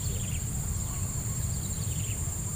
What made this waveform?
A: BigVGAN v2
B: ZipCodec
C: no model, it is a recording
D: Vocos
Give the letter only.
A